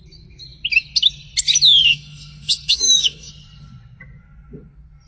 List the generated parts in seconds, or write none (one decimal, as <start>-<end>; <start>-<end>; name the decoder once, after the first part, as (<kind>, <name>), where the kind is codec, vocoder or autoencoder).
1.9-3.3 (autoencoder, DAC-VAE)